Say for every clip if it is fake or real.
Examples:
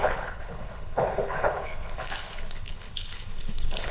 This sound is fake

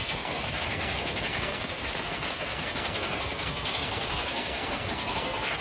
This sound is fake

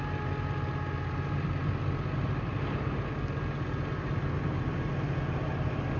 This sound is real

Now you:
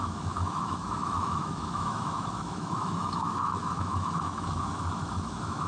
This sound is fake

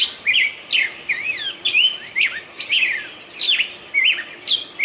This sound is real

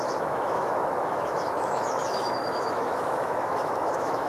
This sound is fake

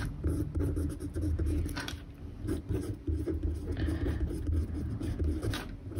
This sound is real